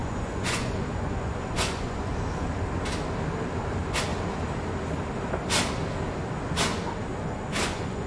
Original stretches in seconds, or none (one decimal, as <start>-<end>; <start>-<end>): 2.1-7.1